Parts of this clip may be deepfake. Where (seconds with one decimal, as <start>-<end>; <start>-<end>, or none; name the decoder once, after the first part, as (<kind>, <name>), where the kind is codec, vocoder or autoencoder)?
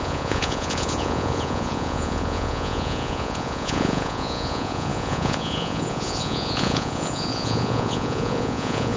0.0-9.0 (vocoder, Vocos)